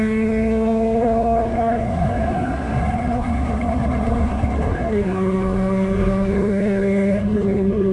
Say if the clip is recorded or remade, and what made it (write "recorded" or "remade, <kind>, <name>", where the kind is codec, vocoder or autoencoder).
remade, codec, SNAC